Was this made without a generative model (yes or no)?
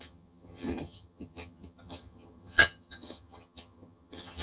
no